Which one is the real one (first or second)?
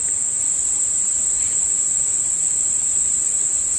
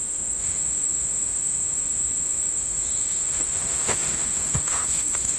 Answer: first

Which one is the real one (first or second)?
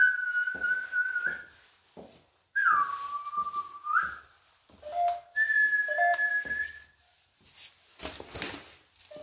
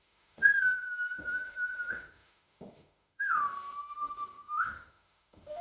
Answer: first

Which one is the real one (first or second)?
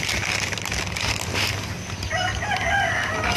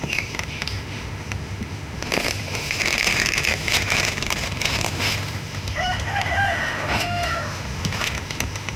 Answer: first